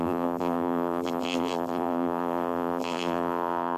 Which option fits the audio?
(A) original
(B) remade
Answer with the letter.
B